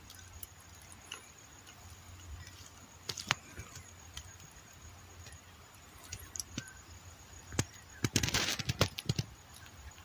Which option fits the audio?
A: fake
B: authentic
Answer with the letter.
B